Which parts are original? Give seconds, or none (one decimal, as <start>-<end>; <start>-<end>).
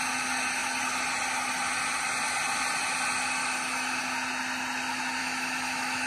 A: 0.0-3.4; 4.0-5.2